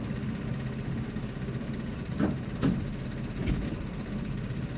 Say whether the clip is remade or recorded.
recorded